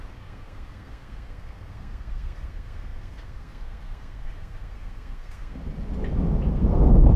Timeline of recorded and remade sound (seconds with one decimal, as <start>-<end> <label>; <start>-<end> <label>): 0.0-5.6 remade; 5.6-6.5 recorded; 6.5-7.2 remade